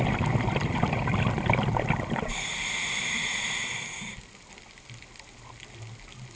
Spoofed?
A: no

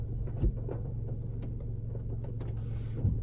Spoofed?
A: no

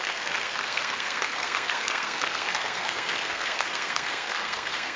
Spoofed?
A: yes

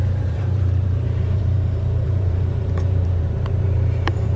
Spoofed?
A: yes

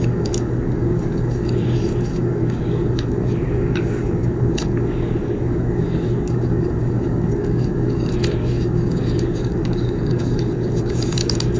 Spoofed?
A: yes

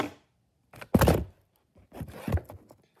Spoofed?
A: no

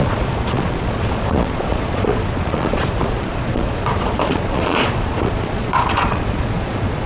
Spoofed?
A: yes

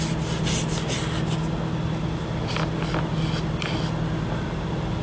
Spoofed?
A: no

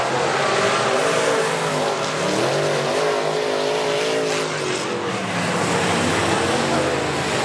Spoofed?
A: no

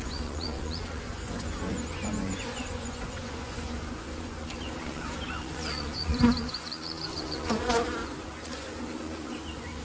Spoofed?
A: yes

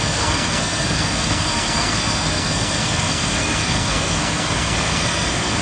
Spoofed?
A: yes